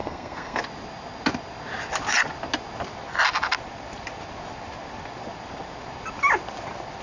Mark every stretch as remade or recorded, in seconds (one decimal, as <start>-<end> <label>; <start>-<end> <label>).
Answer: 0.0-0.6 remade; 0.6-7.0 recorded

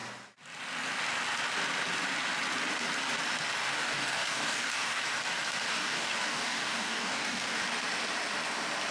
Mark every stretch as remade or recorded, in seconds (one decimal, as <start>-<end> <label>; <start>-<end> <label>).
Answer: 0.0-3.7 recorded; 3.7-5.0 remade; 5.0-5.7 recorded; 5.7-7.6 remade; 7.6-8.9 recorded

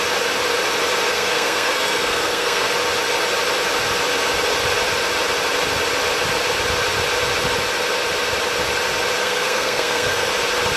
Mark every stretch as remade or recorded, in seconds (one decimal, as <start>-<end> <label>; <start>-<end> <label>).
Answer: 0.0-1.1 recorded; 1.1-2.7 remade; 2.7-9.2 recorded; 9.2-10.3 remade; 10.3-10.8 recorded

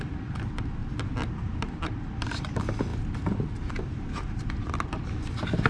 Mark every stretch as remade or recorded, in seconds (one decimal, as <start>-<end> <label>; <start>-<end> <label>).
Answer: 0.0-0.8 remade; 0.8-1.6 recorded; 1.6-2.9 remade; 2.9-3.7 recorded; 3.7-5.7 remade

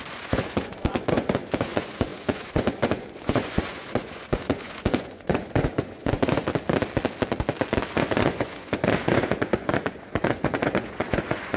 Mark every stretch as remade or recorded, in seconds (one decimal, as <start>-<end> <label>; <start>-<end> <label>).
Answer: 0.0-6.5 remade; 6.5-7.9 recorded; 7.9-11.6 remade